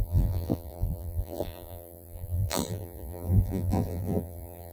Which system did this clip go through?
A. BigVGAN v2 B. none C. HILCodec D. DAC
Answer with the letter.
A